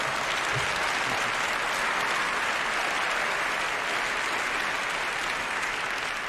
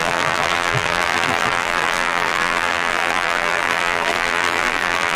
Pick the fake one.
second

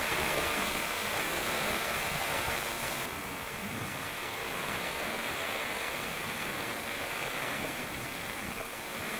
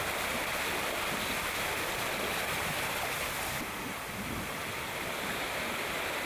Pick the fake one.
first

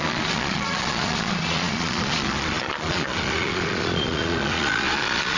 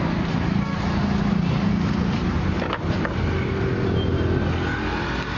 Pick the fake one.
first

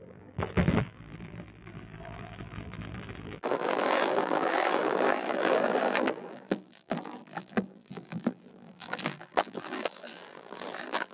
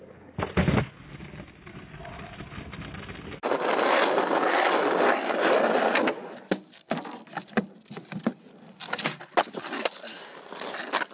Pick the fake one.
first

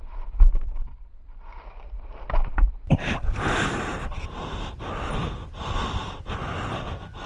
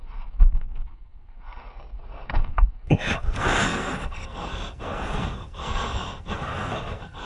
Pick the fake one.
second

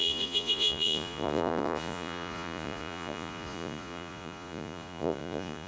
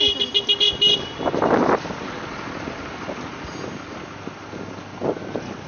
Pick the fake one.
first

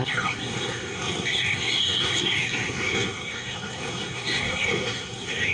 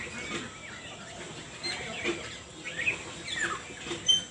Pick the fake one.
first